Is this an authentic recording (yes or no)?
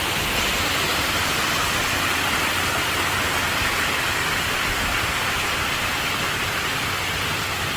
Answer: yes